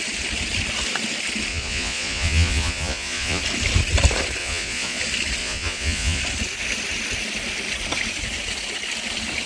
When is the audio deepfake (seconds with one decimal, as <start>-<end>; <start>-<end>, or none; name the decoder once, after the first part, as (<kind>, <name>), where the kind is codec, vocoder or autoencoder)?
1.5-3.4 (vocoder, Vocos); 4.4-5.0; 5.4-6.2